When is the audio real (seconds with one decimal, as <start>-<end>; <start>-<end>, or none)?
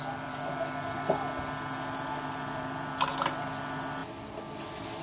0.0-5.0